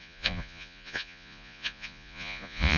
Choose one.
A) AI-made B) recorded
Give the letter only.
A